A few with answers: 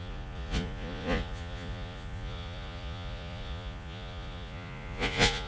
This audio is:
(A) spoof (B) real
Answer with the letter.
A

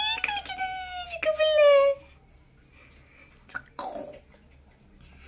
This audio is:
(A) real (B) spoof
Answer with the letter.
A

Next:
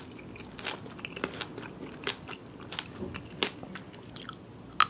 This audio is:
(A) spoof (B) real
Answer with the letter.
B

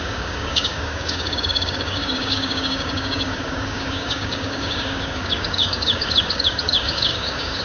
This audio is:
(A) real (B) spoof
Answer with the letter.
B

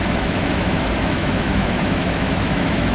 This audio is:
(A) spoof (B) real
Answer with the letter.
A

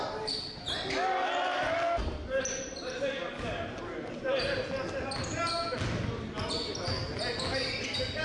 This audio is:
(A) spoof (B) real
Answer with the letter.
B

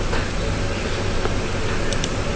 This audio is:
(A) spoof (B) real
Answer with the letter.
B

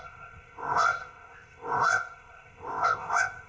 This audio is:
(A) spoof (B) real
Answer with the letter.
A